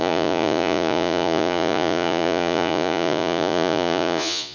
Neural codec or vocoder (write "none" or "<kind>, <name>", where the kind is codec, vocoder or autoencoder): vocoder, Vocos